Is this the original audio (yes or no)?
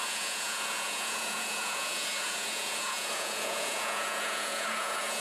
no